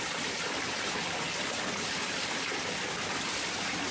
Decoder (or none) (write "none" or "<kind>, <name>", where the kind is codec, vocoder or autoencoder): vocoder, BigVGAN v2